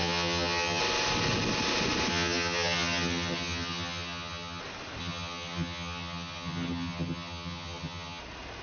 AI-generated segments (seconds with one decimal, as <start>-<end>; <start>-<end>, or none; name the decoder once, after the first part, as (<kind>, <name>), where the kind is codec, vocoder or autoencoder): 0.0-0.8 (vocoder, HiFi-GAN); 2.1-4.6; 5.0-8.2